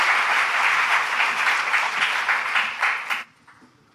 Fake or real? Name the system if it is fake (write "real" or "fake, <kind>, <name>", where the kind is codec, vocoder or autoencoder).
real